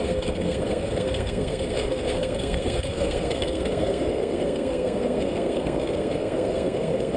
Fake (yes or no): yes